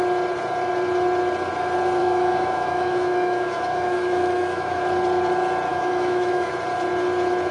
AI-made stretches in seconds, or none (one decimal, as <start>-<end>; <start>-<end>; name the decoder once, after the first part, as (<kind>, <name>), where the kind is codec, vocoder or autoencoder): 2.0-4.8 (autoencoder, DAC-VAE); 5.7-6.5